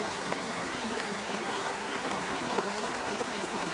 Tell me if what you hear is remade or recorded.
remade